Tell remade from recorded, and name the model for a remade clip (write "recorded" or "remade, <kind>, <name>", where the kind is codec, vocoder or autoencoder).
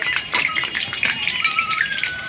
remade, vocoder, BigVGAN v2